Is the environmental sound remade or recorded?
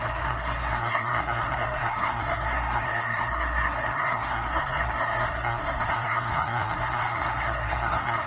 remade